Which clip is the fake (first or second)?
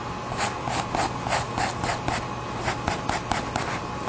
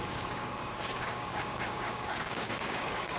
second